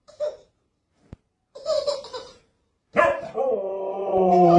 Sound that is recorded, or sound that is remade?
remade